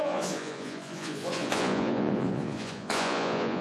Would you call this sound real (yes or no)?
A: no